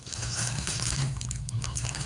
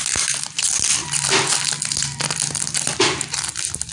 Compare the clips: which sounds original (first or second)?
second